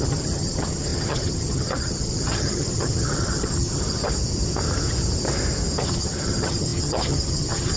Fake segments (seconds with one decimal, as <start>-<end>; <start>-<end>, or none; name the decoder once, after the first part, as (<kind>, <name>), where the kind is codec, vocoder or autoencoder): 0.0-4.0 (vocoder, HiFi-GAN); 5.8-7.8

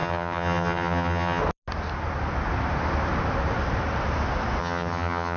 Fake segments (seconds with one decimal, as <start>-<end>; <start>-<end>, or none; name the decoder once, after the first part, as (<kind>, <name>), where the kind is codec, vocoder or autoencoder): 0.0-1.4 (vocoder, HiFi-GAN); 4.6-5.4

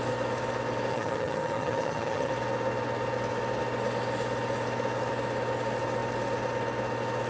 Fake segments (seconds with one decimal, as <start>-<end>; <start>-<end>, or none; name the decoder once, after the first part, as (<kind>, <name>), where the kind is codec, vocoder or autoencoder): 0.9-2.3 (vocoder, HiFi-GAN)

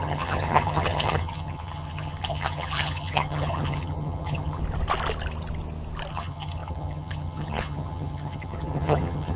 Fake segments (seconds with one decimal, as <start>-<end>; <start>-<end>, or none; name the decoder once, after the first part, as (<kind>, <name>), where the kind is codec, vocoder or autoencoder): 0.0-4.6 (vocoder, HiFi-GAN); 6.1-9.4

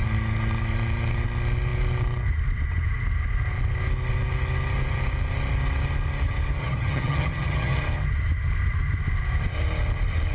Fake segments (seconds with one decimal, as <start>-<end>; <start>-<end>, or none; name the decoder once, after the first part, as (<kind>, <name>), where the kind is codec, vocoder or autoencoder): 6.6-7.8 (vocoder, HiFi-GAN)

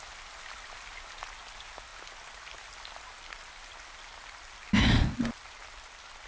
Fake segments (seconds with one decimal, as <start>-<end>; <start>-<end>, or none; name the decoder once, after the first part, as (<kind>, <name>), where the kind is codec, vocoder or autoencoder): none